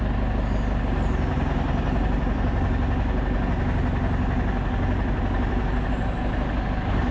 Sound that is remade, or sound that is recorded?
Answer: recorded